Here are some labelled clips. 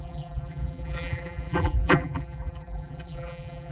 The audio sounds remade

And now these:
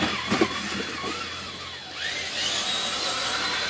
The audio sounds recorded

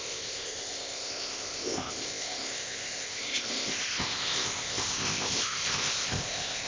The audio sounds remade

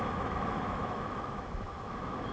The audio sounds remade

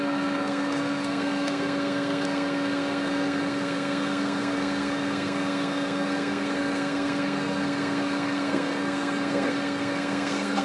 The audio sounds remade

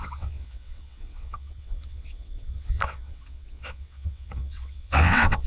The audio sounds remade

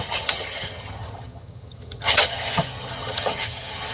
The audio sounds remade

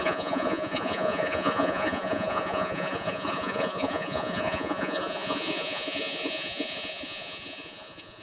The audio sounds remade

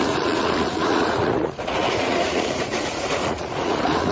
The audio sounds remade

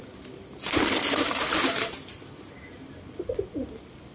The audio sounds recorded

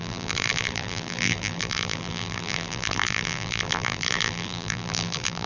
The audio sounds remade